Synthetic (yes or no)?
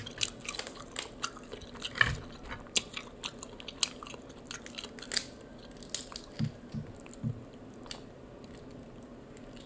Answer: no